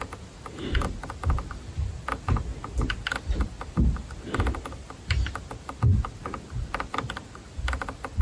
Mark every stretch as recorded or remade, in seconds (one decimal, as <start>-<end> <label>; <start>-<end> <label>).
0.0-8.2 recorded